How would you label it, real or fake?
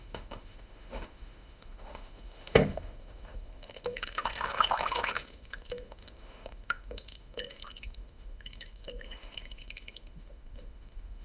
fake